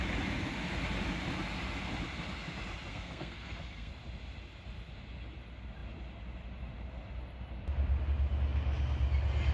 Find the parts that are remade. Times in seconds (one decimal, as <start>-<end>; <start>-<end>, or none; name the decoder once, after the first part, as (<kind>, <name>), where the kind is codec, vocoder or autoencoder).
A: 2.9-3.9 (codec, SNAC)